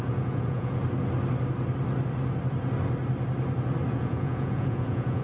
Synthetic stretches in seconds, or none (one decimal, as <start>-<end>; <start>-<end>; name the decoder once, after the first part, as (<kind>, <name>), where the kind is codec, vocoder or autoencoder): 0.0-0.8 (vocoder, Vocos); 3.9-5.2